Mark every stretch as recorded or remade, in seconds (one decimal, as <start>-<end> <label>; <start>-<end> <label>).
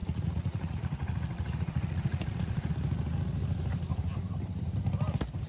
0.0-2.7 remade; 2.7-5.5 recorded